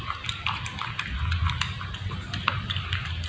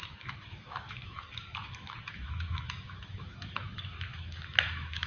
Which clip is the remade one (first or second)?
second